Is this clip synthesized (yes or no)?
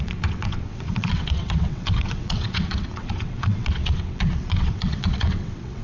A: yes